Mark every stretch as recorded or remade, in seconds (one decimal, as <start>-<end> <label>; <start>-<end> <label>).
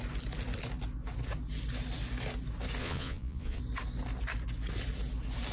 0.0-2.8 recorded; 2.8-3.6 remade; 3.6-5.5 recorded